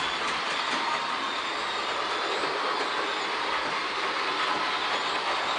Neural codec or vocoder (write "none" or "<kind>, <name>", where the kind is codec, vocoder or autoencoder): none